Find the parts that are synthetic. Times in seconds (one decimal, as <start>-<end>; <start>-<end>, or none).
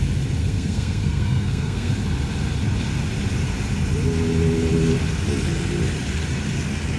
0.4-1.9